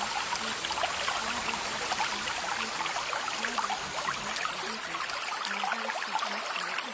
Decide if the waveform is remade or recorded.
recorded